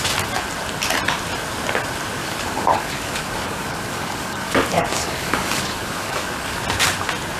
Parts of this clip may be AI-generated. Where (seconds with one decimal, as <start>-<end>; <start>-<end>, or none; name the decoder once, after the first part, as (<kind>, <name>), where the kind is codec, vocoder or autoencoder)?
2.2-6.6 (codec, DAC)